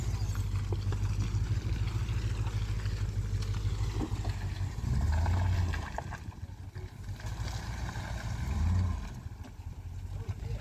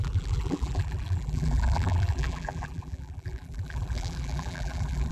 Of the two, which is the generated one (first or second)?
second